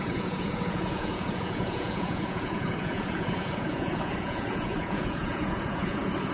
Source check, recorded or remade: remade